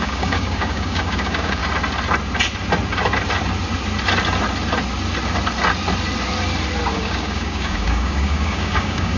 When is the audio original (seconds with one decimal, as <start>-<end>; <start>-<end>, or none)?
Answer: 1.6-6.9